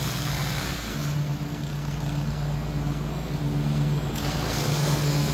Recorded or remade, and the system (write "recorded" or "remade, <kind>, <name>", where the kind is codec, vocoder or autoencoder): remade, codec, SNAC